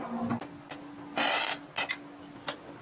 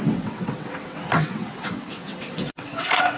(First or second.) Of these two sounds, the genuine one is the first